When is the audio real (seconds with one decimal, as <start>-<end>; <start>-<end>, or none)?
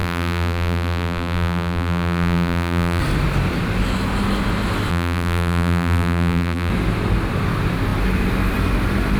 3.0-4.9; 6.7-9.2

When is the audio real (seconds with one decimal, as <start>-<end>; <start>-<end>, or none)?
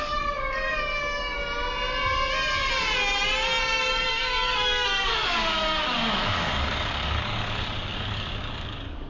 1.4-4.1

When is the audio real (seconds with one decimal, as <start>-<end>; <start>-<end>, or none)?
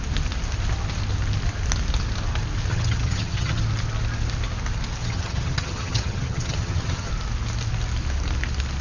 0.0-2.7; 3.6-5.0; 7.1-8.8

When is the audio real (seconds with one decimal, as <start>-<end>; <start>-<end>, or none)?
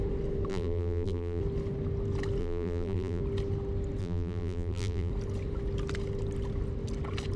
0.0-0.5; 1.4-2.4; 3.2-4.0; 5.1-7.4